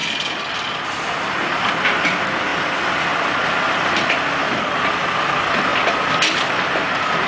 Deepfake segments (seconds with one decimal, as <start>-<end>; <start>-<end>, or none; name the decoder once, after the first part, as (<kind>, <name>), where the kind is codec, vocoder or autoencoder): 2.5-4.2 (vocoder, BigVGAN v2)

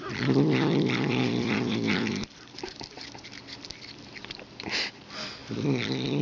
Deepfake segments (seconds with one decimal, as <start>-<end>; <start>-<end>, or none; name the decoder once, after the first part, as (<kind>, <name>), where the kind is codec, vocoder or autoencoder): 1.2-4.9 (vocoder, BigVGAN v2)

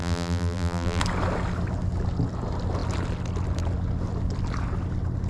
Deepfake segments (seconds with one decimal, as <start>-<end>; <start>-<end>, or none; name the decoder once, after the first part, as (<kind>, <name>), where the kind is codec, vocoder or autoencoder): 0.0-1.0 (vocoder, BigVGAN v2)